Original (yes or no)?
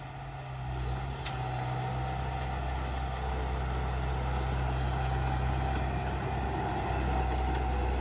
yes